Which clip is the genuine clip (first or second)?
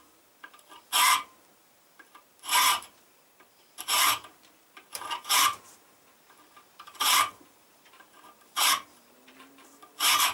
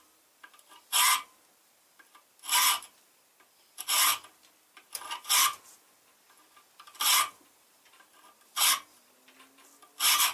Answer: second